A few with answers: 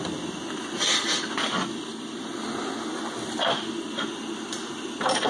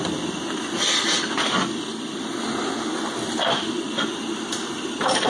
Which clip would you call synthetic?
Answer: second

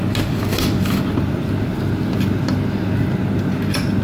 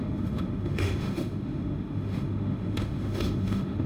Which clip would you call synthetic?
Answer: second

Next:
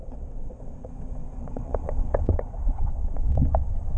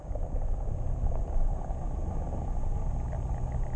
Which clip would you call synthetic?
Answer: first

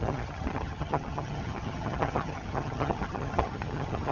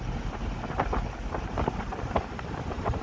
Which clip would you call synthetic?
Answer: first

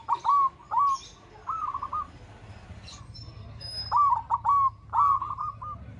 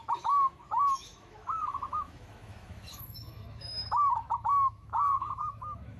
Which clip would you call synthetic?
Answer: second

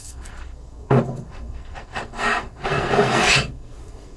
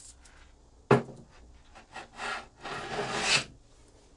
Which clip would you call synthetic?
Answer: first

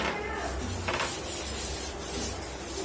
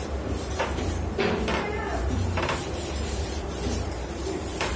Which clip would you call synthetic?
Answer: second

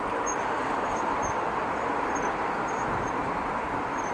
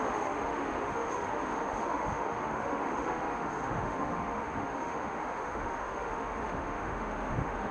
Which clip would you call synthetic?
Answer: second